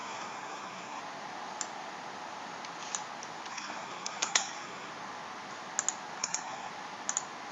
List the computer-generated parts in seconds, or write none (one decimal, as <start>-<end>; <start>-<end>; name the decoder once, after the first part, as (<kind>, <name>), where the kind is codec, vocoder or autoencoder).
0.0-1.0 (codec, SNAC); 3.5-4.9; 6.2-6.7